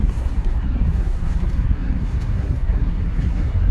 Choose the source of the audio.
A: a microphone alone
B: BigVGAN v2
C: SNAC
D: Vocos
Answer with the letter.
C